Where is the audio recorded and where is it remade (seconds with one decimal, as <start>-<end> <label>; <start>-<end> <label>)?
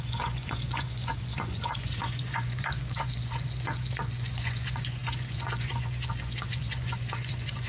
0.0-7.7 remade